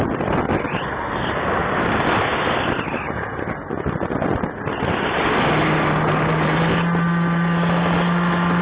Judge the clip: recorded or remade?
recorded